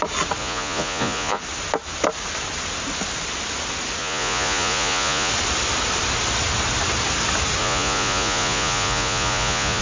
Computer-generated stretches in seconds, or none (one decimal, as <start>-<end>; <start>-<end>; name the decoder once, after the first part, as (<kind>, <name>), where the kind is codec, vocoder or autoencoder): 0.4-1.4 (vocoder, Vocos); 4.0-5.3; 7.6-9.8